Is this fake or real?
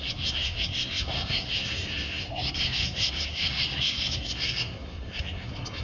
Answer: fake